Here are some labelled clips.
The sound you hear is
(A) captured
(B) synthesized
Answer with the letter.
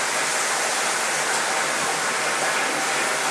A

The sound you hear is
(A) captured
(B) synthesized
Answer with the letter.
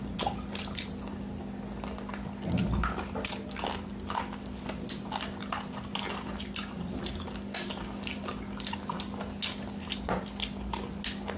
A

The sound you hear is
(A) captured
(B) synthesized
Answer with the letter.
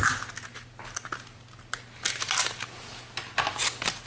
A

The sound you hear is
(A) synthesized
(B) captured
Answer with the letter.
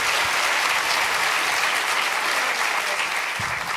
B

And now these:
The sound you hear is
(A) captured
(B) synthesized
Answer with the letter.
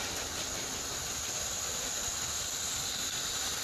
A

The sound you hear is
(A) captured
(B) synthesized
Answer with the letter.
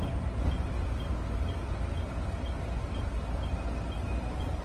A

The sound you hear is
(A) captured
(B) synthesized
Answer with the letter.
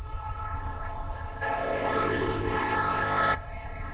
B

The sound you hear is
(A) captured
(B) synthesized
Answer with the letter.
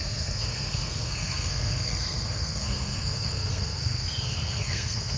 B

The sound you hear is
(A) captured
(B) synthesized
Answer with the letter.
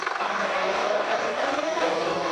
B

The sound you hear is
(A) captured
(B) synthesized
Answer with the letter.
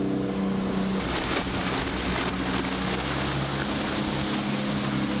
A